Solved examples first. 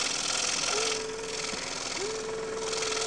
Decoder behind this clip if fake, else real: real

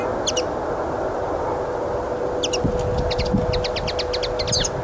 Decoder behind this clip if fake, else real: real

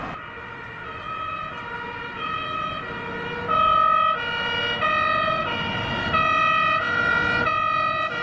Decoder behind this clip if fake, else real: real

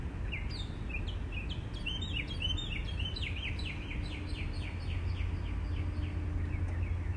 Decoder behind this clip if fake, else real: real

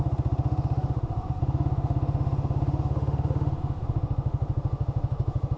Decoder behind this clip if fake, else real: fake, autoencoder, DAC-VAE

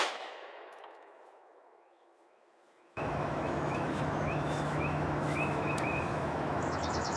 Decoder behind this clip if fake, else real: fake, autoencoder, DAC-VAE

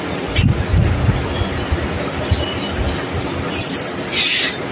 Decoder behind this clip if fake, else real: real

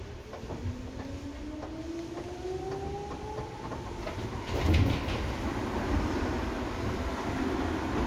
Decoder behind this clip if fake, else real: real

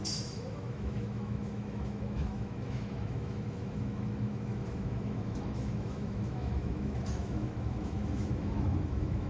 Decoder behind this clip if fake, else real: fake, autoencoder, DAC-VAE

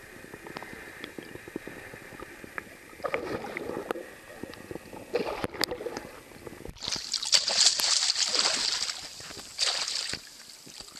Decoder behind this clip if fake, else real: real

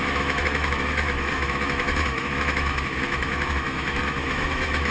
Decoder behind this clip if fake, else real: fake, autoencoder, DAC-VAE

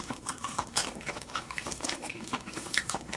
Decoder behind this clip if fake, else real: fake, autoencoder, DAC-VAE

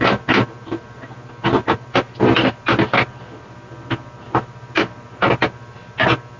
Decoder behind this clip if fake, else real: real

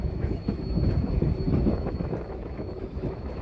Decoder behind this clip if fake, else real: fake, autoencoder, DAC-VAE